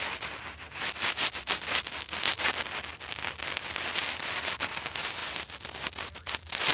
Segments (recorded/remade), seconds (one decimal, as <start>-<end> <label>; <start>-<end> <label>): 0.0-6.7 recorded